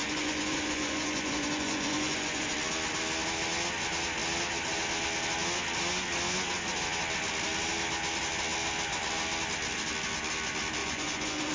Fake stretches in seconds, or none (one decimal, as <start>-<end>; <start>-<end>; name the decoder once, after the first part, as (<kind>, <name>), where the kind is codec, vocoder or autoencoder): 0.0-2.5 (vocoder, Vocos); 10.8-11.5